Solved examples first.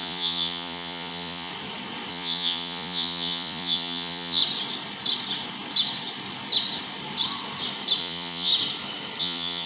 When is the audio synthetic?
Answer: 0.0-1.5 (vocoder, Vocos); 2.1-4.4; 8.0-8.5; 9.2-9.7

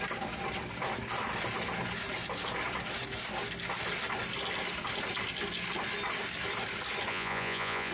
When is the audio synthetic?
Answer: 7.1-7.9 (vocoder, Vocos)